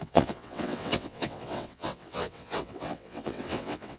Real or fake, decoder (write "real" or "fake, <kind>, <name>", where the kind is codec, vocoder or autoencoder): fake, vocoder, WaveNeXt